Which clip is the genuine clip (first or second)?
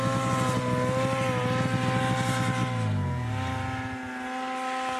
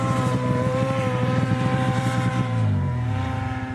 first